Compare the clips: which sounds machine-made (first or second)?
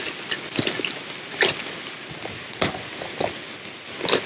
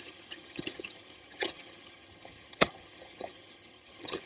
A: second